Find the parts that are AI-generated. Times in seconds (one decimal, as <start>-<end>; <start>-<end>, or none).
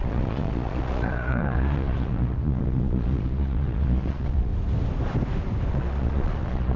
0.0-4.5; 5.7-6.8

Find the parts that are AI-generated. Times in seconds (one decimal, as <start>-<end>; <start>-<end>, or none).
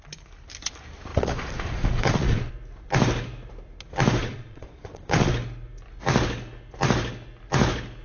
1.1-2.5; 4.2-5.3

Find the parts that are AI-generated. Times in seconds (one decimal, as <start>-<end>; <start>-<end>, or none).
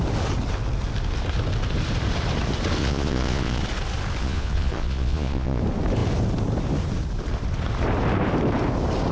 2.8-3.6; 4.2-5.6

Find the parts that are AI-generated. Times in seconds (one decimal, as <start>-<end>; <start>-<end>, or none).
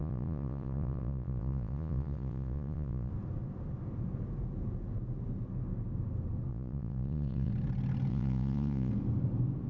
0.0-3.1; 6.5-7.5; 8.1-8.9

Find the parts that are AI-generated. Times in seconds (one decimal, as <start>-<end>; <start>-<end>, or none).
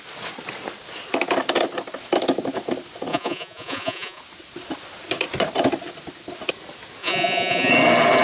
3.1-4.2; 7.0-7.7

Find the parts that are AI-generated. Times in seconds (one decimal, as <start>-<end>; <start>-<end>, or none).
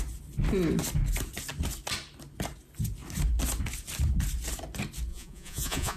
5.1-6.0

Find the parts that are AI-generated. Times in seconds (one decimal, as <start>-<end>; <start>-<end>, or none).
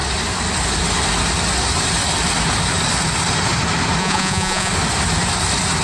4.0-4.7